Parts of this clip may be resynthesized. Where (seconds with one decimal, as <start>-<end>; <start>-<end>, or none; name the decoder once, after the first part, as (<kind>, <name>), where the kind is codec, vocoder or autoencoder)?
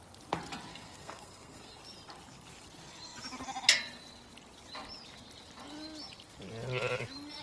0.7-1.8 (codec, SNAC)